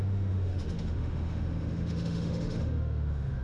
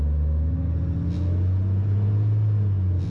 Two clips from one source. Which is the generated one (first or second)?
first